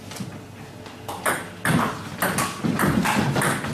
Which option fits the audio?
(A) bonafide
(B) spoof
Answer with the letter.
A